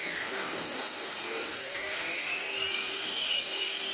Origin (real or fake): fake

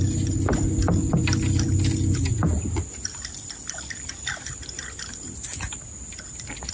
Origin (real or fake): real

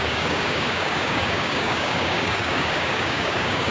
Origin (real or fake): fake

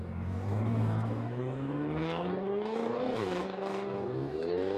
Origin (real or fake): fake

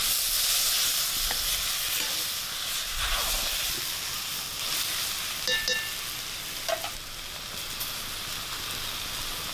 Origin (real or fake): real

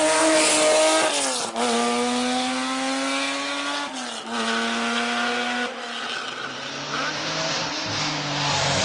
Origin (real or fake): real